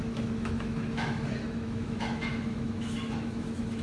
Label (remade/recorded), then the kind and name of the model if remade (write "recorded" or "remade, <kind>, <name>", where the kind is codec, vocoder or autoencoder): remade, autoencoder, DAC-VAE